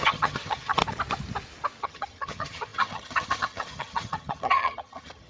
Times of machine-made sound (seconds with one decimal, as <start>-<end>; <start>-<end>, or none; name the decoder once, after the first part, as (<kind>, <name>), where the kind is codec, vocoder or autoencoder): 0.0-0.8 (vocoder, HiFi-GAN); 1.8-5.3